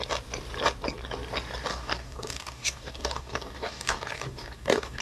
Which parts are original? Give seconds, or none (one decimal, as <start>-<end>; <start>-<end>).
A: 0.0-1.7